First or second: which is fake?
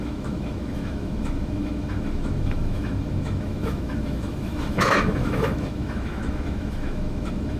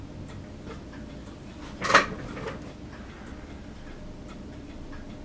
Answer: first